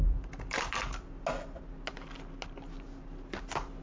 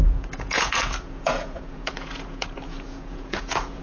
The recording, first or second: first